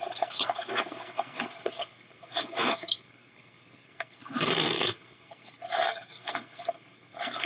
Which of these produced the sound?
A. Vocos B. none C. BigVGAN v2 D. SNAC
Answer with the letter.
D